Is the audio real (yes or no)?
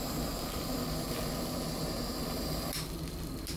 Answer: yes